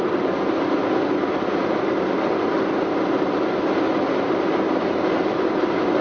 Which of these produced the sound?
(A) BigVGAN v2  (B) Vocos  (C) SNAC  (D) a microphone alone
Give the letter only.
D